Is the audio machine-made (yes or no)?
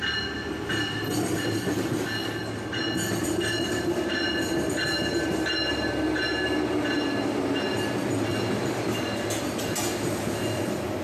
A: no